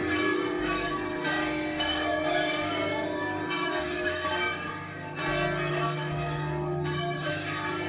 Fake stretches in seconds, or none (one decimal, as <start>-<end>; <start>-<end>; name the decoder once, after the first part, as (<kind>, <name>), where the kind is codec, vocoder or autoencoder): 0.0-5.2 (codec, DAC); 5.7-7.9